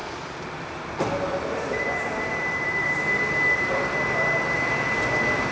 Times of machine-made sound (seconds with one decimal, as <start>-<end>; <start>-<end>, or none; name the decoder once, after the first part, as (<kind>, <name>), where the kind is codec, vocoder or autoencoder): 0.0-5.5 (vocoder, BigVGAN v2)